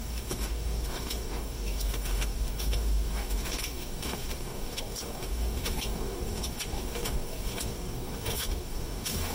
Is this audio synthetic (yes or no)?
yes